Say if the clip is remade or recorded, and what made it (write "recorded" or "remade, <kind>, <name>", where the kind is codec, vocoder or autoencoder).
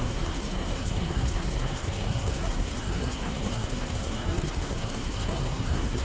remade, codec, SNAC